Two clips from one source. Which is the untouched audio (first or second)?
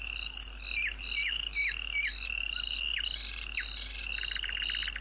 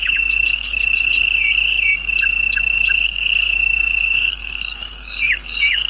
first